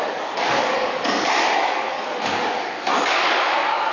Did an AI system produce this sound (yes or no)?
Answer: yes